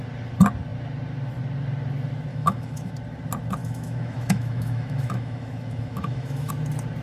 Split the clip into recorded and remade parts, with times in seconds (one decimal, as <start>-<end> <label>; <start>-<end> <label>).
0.0-2.3 recorded; 2.3-2.9 remade; 2.9-3.6 recorded; 3.6-6.5 remade; 6.5-7.0 recorded